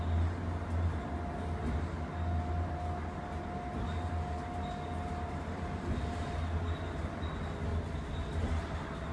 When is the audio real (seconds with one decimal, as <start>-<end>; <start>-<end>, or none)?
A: 0.0-5.1; 5.8-7.7; 8.3-9.1